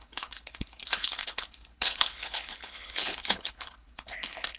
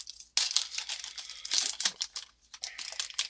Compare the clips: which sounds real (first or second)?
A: second